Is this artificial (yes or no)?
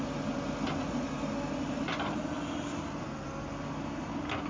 no